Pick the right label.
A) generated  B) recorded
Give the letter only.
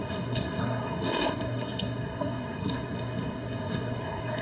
A